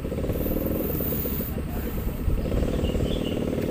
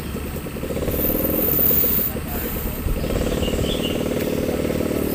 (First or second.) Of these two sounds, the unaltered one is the second